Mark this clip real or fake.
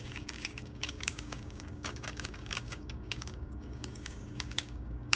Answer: fake